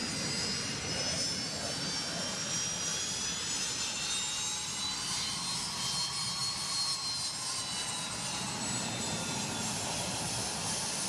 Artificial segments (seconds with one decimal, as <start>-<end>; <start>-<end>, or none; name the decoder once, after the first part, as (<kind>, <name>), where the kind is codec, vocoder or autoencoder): none